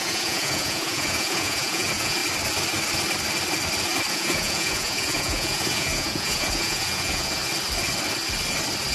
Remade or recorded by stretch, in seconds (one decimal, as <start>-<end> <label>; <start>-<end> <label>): 0.0-2.2 remade; 2.2-4.1 recorded; 4.1-7.4 remade; 7.4-8.9 recorded